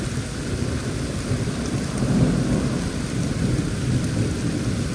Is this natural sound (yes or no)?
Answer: yes